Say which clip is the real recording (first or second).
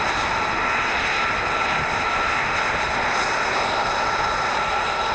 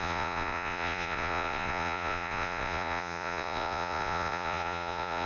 first